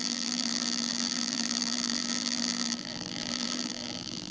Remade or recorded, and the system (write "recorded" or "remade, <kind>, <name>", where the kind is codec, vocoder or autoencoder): remade, vocoder, BigVGAN v2